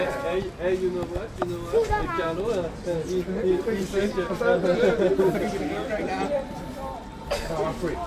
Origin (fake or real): real